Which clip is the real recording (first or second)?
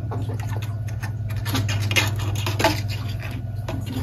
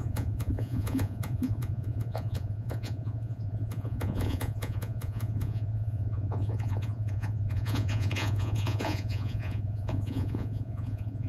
first